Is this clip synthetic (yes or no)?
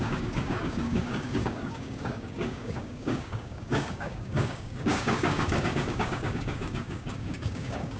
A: yes